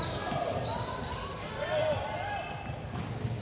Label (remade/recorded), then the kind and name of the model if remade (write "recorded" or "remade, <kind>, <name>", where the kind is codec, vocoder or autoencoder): recorded